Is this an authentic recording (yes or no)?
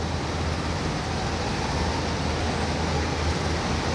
yes